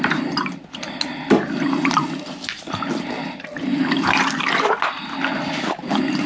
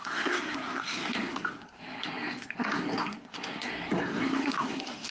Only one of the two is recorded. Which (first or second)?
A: first